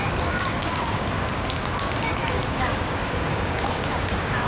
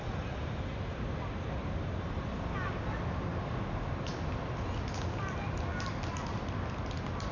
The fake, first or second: first